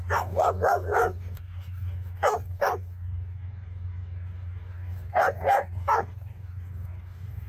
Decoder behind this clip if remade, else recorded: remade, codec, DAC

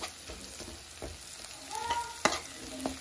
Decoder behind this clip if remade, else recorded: recorded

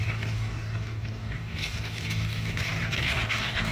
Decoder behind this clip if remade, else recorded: remade, codec, DAC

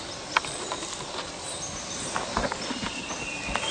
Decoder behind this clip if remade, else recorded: recorded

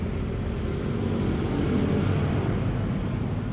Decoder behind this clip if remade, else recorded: recorded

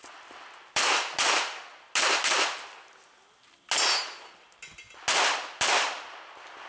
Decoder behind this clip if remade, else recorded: recorded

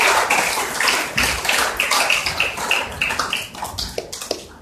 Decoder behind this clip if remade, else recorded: recorded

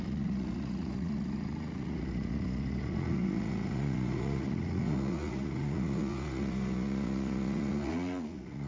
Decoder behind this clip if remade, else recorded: remade, vocoder, Vocos